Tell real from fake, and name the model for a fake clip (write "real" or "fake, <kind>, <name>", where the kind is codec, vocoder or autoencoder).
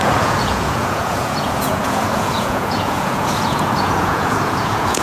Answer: fake, vocoder, Vocos